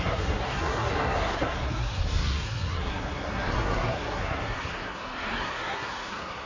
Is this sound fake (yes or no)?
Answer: yes